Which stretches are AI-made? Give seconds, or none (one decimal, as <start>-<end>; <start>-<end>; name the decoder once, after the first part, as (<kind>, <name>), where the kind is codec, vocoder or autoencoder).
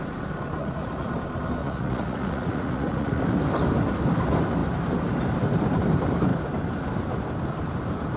0.6-1.1 (vocoder, Vocos); 1.6-3.2